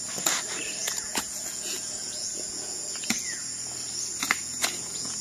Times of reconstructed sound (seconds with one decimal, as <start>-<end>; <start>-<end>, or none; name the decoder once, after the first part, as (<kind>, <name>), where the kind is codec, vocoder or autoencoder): 0.8-3.4 (vocoder, Vocos); 4.4-5.2